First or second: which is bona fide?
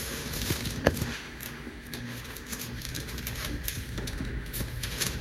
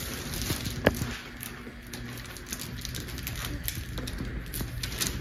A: second